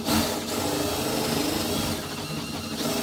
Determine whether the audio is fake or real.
real